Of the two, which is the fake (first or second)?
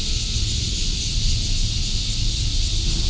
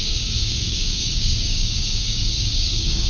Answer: second